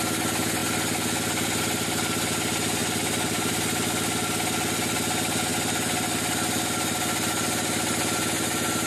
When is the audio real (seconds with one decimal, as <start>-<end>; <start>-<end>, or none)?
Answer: 0.0-2.8; 3.5-8.9

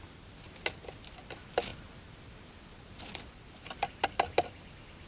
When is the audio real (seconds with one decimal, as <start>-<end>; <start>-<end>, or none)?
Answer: 0.0-5.1

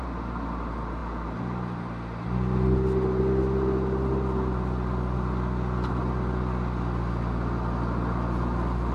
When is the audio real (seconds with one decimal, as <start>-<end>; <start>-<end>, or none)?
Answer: 0.0-8.9

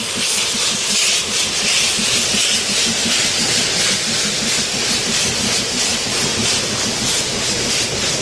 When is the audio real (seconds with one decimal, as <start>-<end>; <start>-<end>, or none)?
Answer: 0.0-8.2

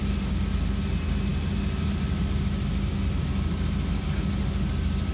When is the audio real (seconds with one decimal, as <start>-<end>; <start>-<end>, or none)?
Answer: 0.0-5.1

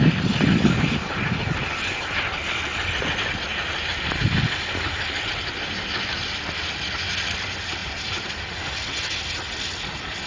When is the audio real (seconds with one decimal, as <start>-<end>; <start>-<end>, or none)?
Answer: 0.0-7.8; 8.7-10.3